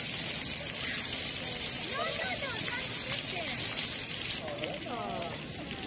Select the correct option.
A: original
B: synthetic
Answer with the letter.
B